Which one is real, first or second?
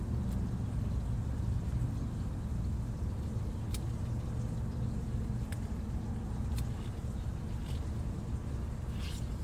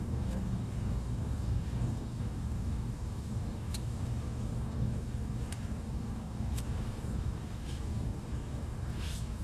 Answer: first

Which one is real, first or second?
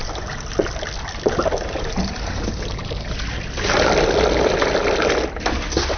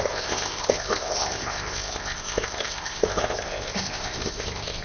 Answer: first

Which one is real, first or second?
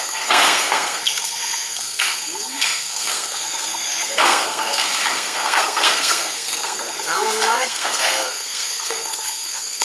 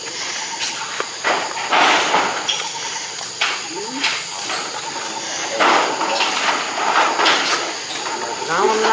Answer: second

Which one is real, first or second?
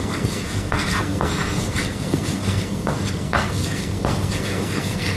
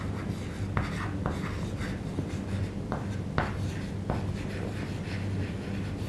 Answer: second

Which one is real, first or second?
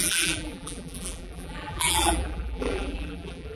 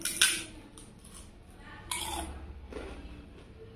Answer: second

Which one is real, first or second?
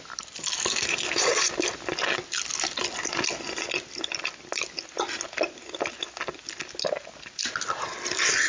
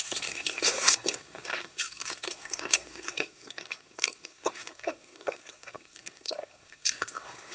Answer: first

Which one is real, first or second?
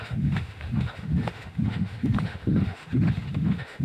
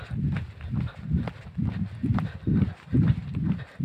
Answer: second